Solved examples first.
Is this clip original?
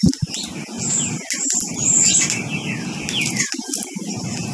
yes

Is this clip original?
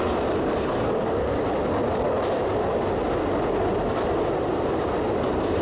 yes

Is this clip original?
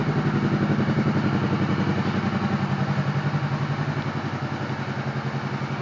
yes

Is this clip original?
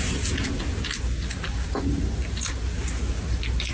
yes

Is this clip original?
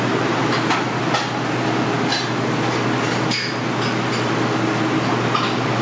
yes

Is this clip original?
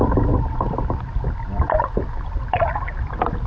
yes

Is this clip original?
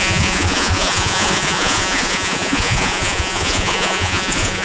no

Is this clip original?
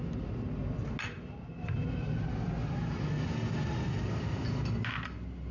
yes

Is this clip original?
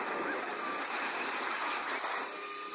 yes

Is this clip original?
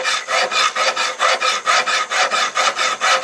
yes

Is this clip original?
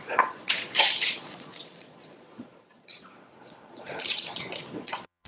no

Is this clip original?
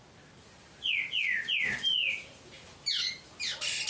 yes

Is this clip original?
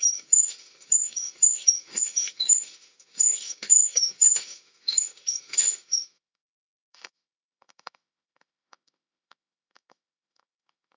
no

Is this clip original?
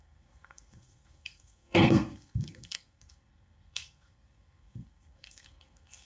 no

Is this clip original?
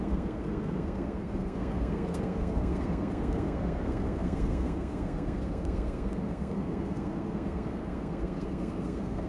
no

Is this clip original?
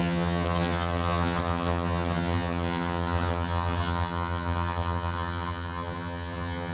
no